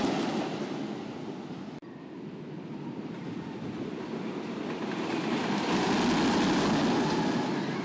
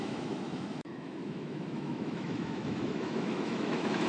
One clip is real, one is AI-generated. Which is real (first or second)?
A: first